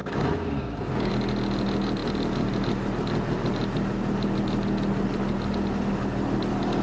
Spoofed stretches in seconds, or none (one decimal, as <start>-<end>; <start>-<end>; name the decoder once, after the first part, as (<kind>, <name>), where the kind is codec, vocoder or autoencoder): 0.0-1.1 (codec, DAC)